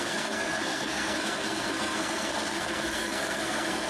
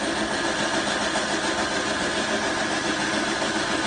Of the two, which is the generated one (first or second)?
first